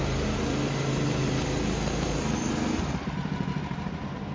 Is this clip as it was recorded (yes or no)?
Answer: yes